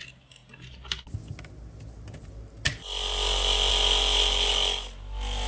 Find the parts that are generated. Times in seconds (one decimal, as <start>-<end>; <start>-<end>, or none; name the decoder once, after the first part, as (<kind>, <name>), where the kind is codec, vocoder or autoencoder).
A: none